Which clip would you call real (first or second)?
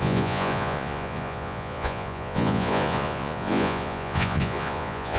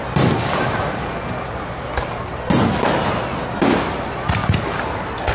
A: second